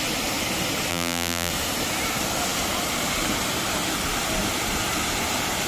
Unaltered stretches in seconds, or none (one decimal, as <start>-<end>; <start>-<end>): 0.0-0.9; 1.5-5.7